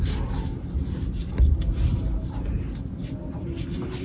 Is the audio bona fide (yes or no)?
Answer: yes